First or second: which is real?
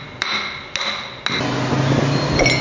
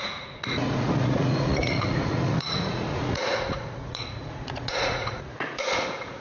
first